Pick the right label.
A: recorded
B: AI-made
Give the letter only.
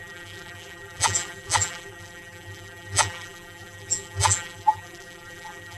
B